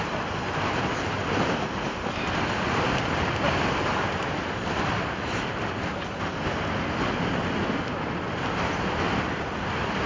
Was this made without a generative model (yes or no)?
yes